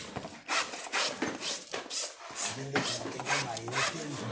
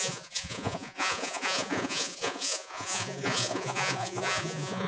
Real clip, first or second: first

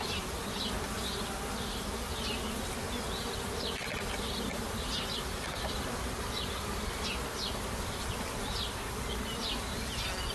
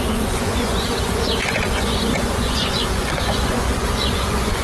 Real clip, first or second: first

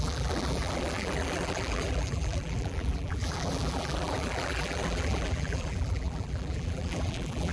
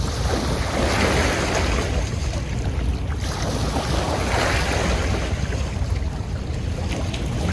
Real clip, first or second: second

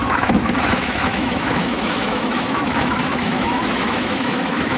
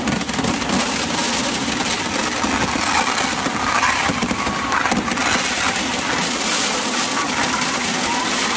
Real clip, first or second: second